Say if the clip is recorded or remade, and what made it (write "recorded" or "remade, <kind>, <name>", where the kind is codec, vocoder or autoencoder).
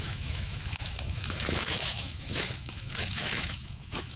remade, autoencoder, DAC-VAE